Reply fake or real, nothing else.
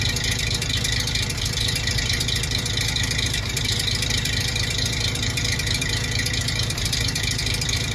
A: fake